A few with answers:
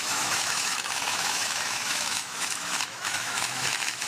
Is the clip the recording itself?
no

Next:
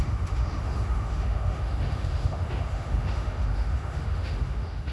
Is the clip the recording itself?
no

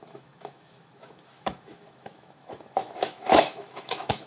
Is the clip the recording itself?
no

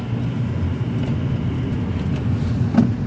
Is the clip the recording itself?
yes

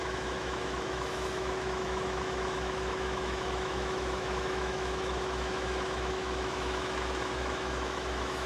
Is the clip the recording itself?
no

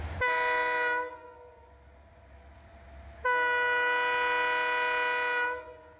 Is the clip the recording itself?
yes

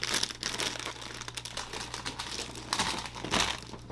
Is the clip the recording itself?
yes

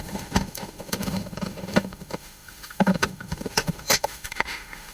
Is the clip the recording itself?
no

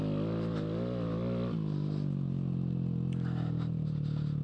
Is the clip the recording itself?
yes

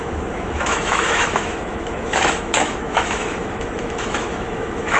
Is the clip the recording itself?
no